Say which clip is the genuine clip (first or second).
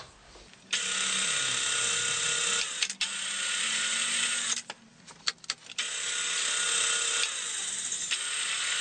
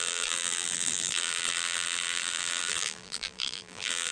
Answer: first